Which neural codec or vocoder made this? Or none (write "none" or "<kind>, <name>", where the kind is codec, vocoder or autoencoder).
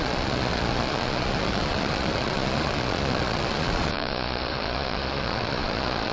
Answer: vocoder, Vocos